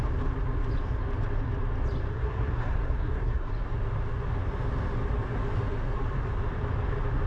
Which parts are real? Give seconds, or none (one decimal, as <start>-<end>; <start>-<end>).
0.0-2.1; 3.5-7.3